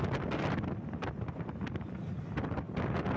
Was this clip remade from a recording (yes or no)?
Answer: no